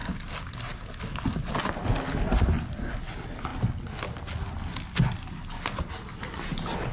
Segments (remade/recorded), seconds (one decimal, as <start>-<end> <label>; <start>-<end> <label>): 0.0-6.9 recorded